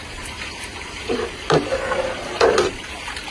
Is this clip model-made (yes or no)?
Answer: yes